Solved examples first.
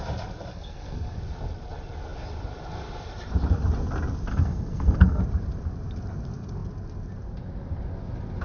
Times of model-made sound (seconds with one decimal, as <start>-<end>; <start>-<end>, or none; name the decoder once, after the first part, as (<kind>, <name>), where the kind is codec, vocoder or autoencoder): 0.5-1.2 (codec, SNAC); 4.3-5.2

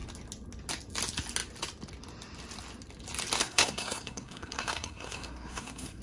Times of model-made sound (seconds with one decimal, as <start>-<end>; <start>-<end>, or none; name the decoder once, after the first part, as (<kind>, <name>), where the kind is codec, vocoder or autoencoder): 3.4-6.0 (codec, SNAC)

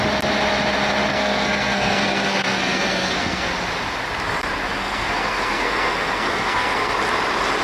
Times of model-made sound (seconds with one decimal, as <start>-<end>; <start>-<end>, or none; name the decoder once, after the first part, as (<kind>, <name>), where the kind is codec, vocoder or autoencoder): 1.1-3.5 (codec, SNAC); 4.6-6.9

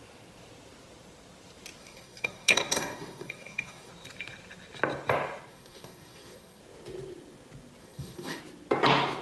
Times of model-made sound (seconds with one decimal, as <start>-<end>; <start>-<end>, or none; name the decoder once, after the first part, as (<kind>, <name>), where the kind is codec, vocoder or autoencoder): 1.8-3.9 (codec, SNAC); 5.5-6.6; 7.8-8.4

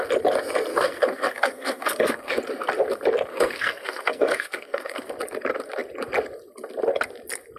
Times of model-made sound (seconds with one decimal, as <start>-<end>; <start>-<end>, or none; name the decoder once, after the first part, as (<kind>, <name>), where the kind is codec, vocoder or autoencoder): 0.7-2.4 (codec, SNAC); 3.3-5.1